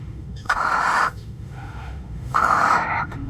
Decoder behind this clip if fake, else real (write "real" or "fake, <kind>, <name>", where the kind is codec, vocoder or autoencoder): fake, autoencoder, DAC-VAE